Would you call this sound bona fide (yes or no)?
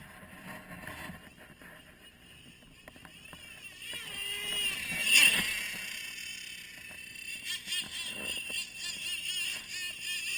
yes